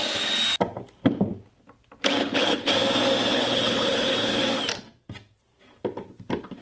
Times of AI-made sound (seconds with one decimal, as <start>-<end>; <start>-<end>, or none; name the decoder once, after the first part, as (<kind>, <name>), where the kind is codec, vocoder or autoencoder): 2.2-2.7 (codec, HILCodec); 3.3-4.4